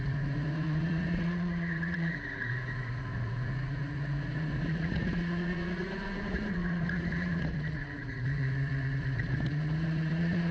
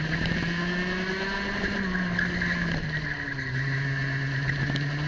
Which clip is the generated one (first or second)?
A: first